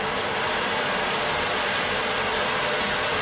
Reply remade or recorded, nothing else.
recorded